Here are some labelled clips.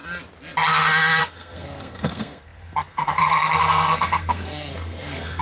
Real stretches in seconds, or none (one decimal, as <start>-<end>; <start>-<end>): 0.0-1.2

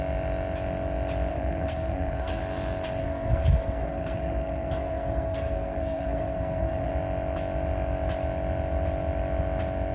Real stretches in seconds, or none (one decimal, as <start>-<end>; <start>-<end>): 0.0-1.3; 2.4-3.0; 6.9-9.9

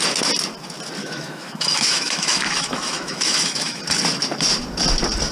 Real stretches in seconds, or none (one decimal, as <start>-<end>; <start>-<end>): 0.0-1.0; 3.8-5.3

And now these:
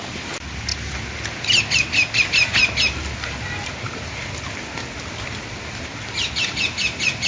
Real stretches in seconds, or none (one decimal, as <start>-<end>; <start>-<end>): 0.0-7.3

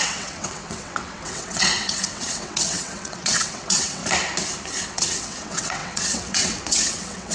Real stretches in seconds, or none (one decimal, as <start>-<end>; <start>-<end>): 4.0-4.7

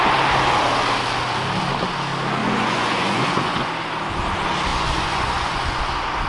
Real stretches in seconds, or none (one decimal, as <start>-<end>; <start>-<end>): 0.0-2.4; 3.7-4.7; 5.8-6.3